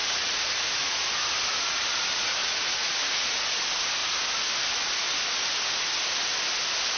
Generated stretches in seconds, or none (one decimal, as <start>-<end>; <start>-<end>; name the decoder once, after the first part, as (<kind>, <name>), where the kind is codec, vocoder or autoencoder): 0.0-1.0 (vocoder, Vocos); 2.4-3.6